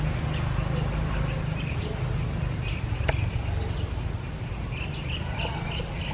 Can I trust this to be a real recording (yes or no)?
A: yes